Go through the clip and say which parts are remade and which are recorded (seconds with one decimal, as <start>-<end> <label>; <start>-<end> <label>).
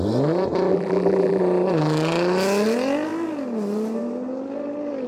0.0-0.7 recorded; 0.7-1.4 remade; 1.4-5.1 recorded